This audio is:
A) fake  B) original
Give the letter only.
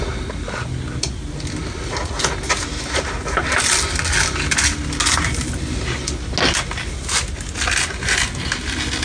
B